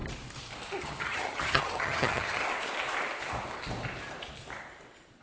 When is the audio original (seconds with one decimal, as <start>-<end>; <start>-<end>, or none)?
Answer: 0.0-0.8; 2.4-5.2